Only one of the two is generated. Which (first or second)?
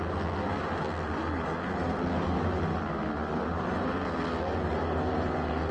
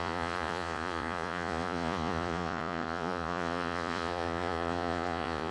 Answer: second